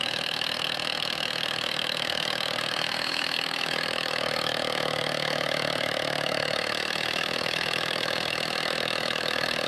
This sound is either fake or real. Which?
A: fake